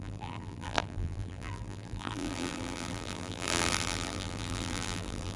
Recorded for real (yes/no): no